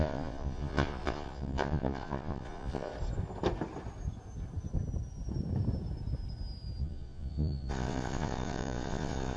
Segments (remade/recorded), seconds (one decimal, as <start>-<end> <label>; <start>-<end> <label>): 0.0-2.9 remade; 2.9-6.8 recorded; 6.8-9.4 remade